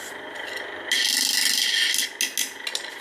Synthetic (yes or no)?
no